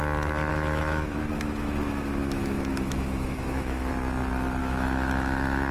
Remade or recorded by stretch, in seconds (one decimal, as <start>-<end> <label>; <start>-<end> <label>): 0.0-0.5 recorded; 0.5-3.9 remade; 3.9-4.6 recorded; 4.6-5.7 remade